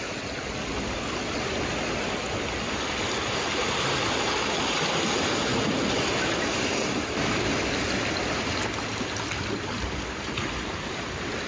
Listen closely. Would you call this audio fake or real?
real